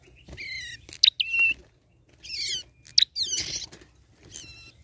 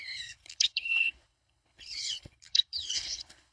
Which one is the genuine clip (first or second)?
first